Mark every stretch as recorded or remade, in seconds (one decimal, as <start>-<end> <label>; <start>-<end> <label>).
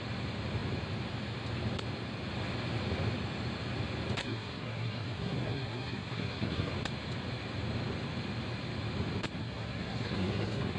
0.0-4.2 recorded; 4.2-6.7 remade; 6.7-9.4 recorded; 9.4-10.8 remade